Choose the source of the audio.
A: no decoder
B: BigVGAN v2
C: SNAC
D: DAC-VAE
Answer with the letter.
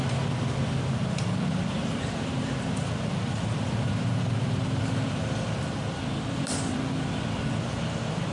B